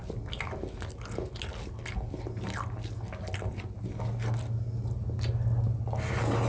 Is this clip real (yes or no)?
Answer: yes